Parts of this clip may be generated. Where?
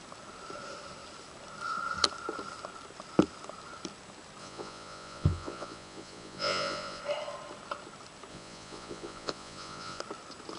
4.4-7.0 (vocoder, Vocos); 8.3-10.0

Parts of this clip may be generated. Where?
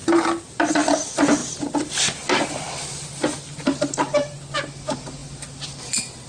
none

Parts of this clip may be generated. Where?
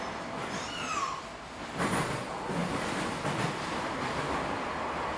none